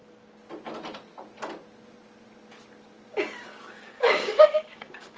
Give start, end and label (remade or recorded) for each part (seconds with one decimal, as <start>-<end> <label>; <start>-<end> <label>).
0.0-3.1 recorded; 3.1-5.2 remade